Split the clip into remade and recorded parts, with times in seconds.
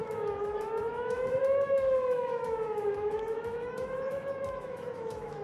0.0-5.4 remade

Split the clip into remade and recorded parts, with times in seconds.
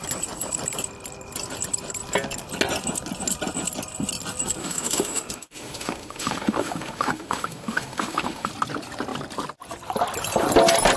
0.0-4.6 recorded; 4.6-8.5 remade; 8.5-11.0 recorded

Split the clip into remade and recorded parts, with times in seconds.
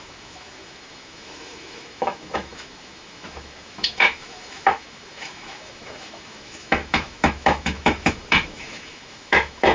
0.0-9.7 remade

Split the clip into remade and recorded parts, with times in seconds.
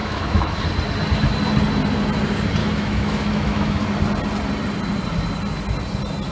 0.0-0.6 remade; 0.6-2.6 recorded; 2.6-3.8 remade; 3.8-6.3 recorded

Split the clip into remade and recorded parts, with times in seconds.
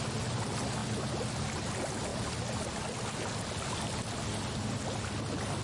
0.0-5.6 recorded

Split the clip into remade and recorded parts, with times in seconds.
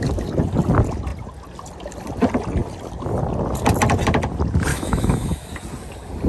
0.0-4.7 recorded; 4.7-5.5 remade; 5.5-6.3 recorded